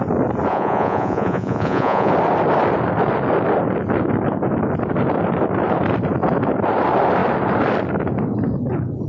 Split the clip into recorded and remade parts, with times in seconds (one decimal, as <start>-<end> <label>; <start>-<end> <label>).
0.0-0.5 recorded; 0.5-2.1 remade; 2.1-9.1 recorded